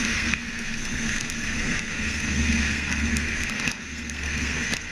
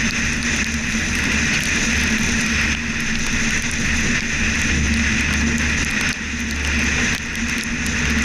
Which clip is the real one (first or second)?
second